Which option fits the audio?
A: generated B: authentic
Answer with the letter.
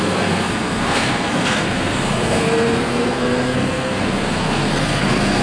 A